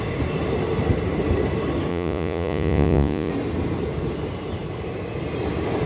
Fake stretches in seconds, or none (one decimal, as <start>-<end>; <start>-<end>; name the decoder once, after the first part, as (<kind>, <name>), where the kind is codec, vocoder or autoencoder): 1.9-3.3 (vocoder, Vocos)